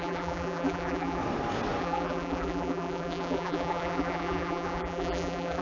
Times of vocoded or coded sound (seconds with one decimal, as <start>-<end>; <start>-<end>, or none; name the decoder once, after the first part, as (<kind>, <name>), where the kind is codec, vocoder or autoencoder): 0.0-1.2 (vocoder, BigVGAN v2); 1.8-5.6